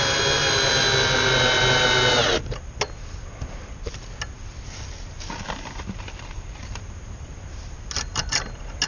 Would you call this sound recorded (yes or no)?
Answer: yes